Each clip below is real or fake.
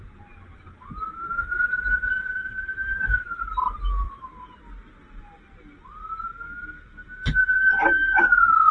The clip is fake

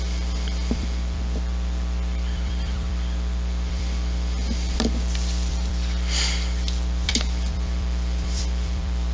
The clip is fake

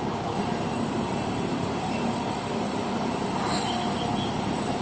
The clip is fake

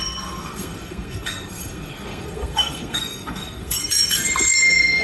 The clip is fake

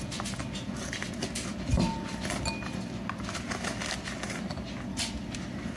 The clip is real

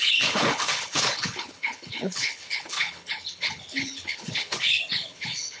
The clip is fake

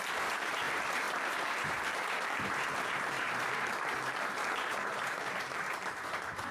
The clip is fake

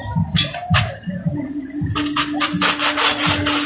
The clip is real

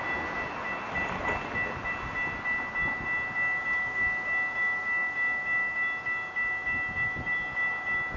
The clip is real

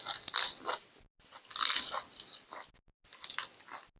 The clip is real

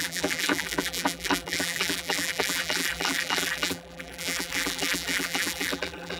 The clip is fake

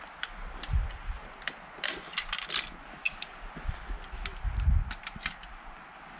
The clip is real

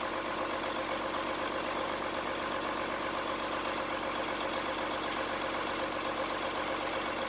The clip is real